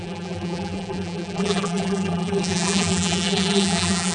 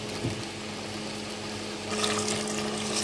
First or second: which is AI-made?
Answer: first